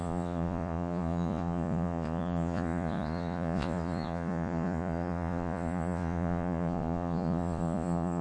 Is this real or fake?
fake